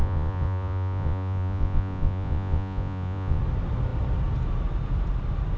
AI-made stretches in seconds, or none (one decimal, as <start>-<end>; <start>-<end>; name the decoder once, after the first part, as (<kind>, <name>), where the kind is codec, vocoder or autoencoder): 0.0-3.4 (vocoder, Vocos)